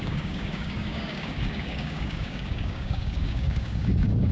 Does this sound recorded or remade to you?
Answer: remade